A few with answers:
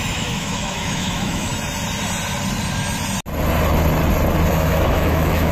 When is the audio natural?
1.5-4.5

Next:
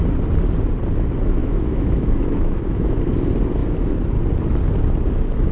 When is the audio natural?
0.0-1.4; 3.0-5.5

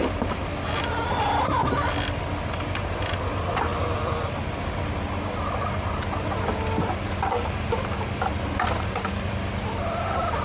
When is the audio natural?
0.0-10.4

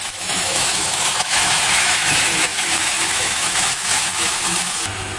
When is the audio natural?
none

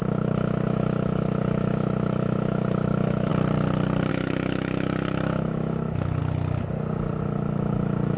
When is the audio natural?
3.3-4.1; 6.2-7.2

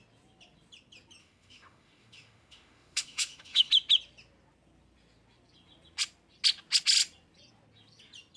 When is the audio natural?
0.0-1.2; 3.7-8.4

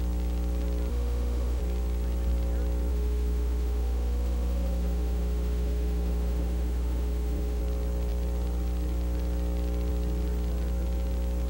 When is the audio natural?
0.0-0.9; 1.6-2.9; 7.6-11.5

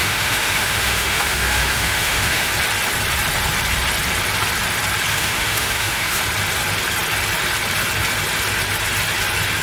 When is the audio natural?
2.5-5.1; 6.2-9.6